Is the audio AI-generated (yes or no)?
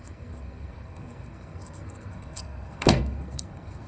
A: yes